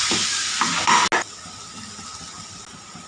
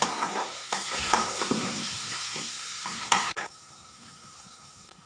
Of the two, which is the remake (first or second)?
second